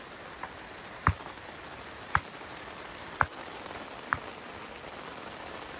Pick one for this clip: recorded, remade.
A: recorded